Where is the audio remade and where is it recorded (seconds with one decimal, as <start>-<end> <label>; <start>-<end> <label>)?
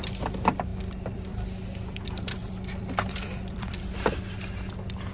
0.0-0.7 recorded; 0.7-3.8 remade; 3.8-5.1 recorded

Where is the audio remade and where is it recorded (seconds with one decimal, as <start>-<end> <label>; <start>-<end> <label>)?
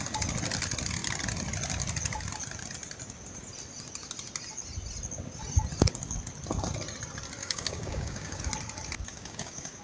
0.0-7.4 recorded; 7.4-8.5 remade; 8.5-9.1 recorded; 9.1-9.8 remade